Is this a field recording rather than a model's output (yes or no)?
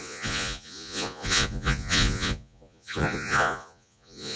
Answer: no